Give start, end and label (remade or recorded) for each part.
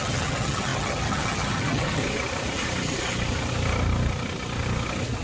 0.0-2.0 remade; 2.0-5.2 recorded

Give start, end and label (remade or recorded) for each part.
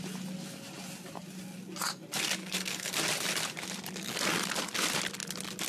0.0-2.4 recorded; 2.4-2.9 remade; 2.9-5.7 recorded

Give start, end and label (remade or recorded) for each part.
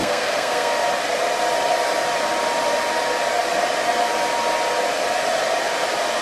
0.0-0.7 remade; 0.7-6.2 recorded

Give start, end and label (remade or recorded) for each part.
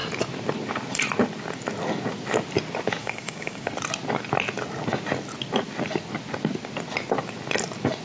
0.0-3.0 recorded; 3.0-3.7 remade; 3.7-8.0 recorded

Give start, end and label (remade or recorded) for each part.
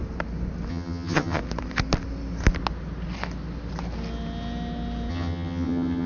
0.0-0.7 recorded; 0.7-1.4 remade; 1.4-5.1 recorded; 5.1-6.1 remade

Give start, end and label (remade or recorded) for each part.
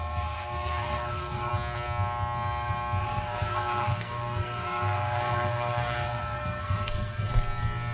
0.0-1.5 remade; 1.5-3.0 recorded; 3.0-7.3 remade; 7.3-7.9 recorded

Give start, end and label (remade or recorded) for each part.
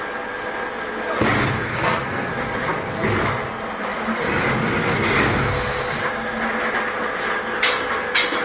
0.0-1.7 recorded; 1.7-2.3 remade; 2.3-8.4 recorded